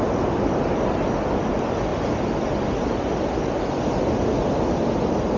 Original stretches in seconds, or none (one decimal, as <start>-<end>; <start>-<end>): 0.0-5.4